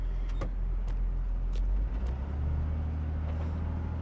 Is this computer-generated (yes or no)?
no